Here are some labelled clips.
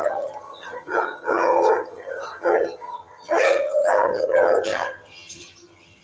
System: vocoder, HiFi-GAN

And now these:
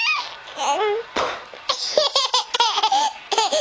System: none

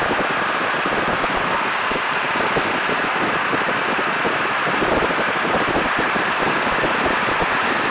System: none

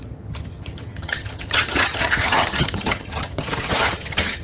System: vocoder, HiFi-GAN